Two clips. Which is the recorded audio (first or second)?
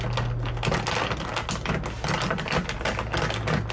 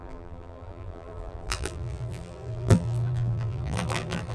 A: first